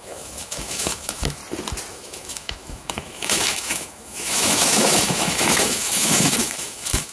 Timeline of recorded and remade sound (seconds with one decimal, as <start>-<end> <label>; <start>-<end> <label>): 0.0-1.4 remade; 1.4-1.9 recorded; 1.9-7.1 remade